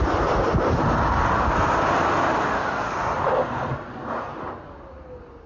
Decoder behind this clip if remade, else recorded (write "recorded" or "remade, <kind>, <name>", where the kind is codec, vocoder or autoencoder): recorded